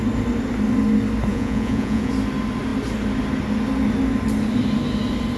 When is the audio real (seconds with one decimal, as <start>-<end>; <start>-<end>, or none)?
0.0-1.3; 2.1-5.4